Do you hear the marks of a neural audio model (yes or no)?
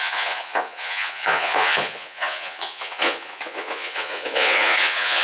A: yes